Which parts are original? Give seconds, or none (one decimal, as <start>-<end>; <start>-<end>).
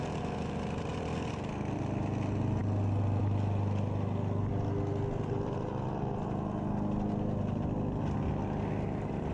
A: 0.0-9.3